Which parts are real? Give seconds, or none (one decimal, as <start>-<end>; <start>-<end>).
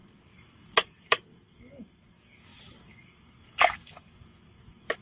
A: none